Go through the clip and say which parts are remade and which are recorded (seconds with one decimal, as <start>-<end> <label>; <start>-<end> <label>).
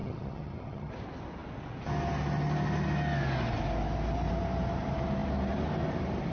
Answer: 0.0-0.9 remade; 0.9-6.3 recorded